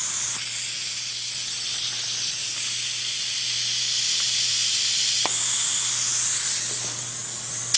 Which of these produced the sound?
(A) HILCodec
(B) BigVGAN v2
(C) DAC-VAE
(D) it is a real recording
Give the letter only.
D